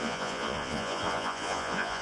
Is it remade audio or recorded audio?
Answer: remade